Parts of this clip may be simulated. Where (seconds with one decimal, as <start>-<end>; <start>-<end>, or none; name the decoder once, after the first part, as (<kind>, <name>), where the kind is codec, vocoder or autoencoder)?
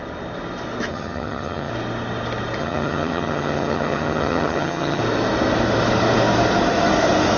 0.9-1.7 (vocoder, HiFi-GAN); 2.6-5.0